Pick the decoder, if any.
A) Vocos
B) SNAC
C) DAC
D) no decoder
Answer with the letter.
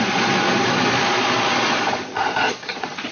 A